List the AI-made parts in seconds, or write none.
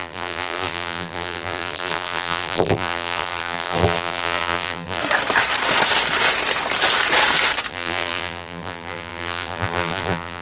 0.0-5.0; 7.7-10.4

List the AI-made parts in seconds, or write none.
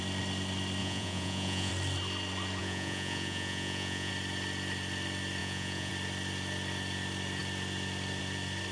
0.8-1.7; 2.6-4.1; 5.4-5.9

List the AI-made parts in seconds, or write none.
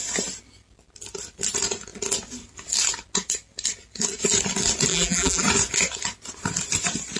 4.9-5.4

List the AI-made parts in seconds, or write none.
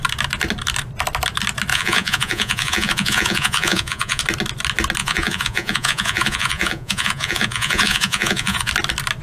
1.7-4.2; 5.0-8.7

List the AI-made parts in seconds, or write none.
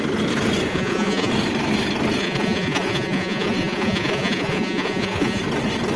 0.7-1.3; 2.2-5.4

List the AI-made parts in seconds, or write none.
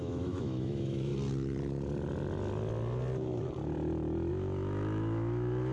0.0-1.1; 4.3-5.7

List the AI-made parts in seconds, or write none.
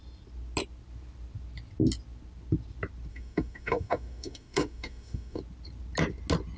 3.1-5.4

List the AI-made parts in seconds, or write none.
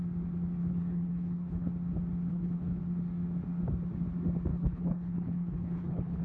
0.6-1.7; 2.3-2.8; 4.5-6.2